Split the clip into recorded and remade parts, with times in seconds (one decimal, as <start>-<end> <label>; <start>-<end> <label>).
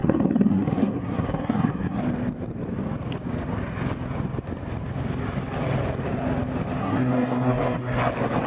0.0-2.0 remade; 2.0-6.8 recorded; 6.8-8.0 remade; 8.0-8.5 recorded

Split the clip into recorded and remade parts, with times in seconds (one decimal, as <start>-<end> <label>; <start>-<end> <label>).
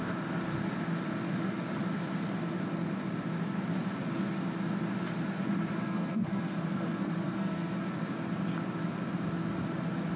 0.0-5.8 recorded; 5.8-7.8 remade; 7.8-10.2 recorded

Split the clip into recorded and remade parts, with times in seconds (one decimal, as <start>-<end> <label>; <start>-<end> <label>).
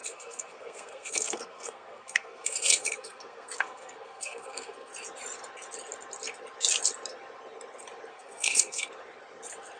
0.0-4.9 remade; 4.9-8.1 recorded; 8.1-8.9 remade; 8.9-9.8 recorded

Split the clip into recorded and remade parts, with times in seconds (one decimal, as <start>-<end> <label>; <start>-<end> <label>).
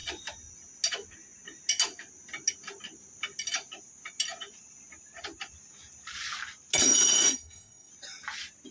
0.0-6.8 recorded; 6.8-7.9 remade; 7.9-8.7 recorded